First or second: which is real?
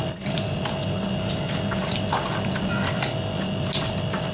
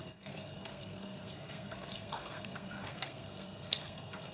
first